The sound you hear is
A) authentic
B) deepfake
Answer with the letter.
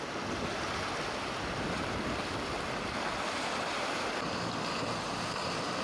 A